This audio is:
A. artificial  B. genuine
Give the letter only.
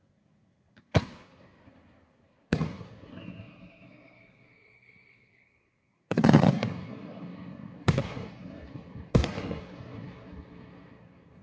A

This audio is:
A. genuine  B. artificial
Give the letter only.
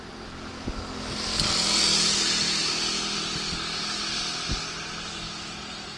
A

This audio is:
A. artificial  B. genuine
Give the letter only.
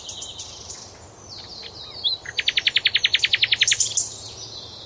B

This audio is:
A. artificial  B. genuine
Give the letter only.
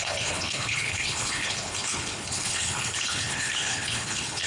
A